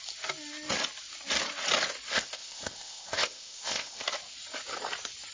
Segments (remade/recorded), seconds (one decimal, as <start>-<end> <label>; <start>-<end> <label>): 0.0-2.1 recorded; 2.1-4.0 remade; 4.0-5.3 recorded